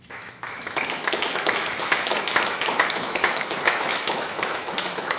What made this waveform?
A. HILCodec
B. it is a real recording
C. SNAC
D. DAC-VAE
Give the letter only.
D